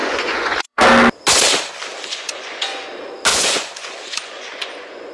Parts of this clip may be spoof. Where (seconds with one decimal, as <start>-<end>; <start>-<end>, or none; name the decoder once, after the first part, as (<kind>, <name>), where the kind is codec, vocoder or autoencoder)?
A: 0.0-0.8 (vocoder, Vocos); 1.9-2.9; 3.3-5.1